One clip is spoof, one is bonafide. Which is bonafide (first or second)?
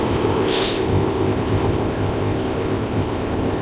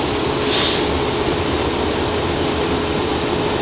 second